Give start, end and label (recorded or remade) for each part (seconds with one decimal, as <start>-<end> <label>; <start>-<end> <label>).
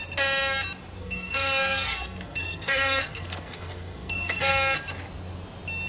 0.0-1.0 recorded; 1.0-4.5 remade; 4.5-5.9 recorded